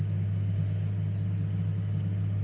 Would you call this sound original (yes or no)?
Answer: yes